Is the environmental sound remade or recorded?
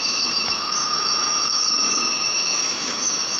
remade